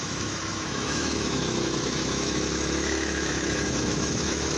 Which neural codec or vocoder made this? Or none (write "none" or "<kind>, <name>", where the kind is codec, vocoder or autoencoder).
autoencoder, DAC-VAE